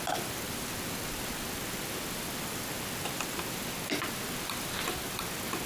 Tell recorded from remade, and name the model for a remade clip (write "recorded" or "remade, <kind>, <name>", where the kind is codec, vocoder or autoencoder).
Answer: recorded